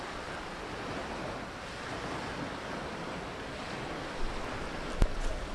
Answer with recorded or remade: recorded